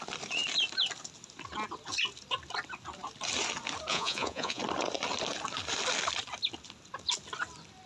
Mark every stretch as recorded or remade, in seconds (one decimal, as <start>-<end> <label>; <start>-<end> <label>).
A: 0.0-3.9 recorded; 3.9-4.6 remade; 4.6-7.9 recorded